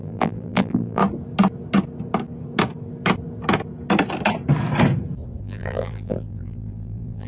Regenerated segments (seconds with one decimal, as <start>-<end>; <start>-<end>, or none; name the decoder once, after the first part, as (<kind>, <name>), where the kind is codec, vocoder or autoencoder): 0.0-1.0 (vocoder, BigVGAN v2); 5.4-7.3